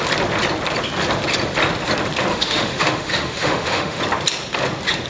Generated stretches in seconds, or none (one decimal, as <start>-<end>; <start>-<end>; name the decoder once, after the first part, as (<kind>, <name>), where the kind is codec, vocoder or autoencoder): 2.3-4.0 (autoencoder, DAC-VAE)